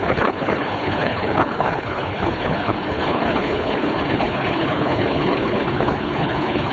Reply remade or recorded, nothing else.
remade